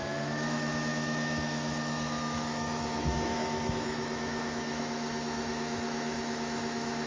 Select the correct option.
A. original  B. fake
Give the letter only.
B